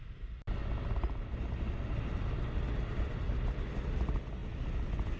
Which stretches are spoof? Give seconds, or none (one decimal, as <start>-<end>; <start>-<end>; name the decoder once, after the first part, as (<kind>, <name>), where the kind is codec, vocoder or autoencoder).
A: none